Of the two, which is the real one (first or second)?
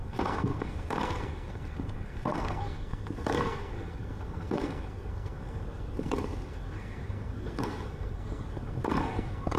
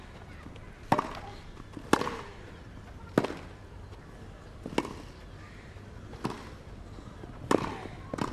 second